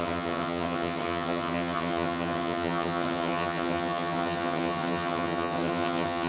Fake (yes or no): yes